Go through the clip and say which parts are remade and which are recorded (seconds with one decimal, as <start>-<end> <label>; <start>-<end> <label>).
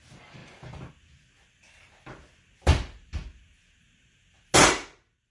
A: 0.0-5.3 recorded